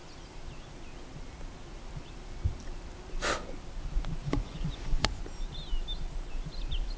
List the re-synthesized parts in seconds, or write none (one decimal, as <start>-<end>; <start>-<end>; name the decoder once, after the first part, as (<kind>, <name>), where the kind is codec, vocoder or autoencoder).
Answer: 4.2-5.2 (vocoder, Vocos)